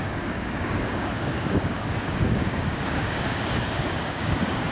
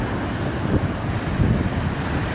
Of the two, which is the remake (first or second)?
first